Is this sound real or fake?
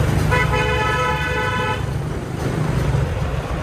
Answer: real